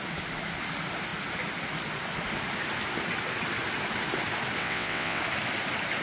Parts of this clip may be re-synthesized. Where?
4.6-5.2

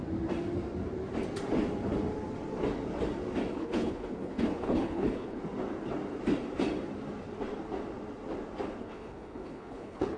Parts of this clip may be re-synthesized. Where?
3.5-5.4; 8.8-10.2

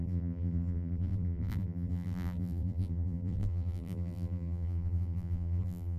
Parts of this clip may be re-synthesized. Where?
0.0-6.0

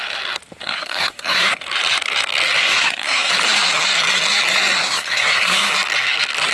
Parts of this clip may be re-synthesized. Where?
0.6-1.6; 2.6-3.3; 4.8-5.7

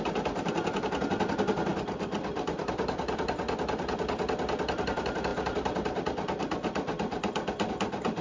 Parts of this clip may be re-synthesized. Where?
none